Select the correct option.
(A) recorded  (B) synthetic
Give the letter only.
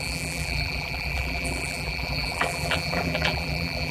B